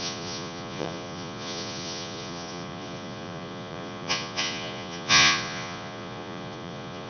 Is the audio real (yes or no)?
no